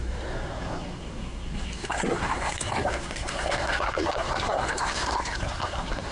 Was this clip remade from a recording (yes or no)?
yes